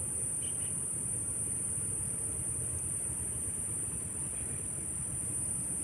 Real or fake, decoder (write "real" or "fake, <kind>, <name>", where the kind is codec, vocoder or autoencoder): real